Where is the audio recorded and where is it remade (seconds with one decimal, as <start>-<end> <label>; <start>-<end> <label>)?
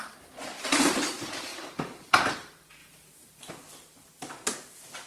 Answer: 0.0-1.5 recorded; 1.5-2.3 remade; 2.3-2.8 recorded; 2.8-3.5 remade; 3.5-5.1 recorded